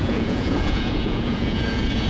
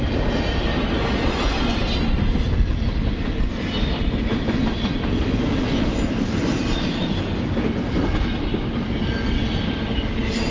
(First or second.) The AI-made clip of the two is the first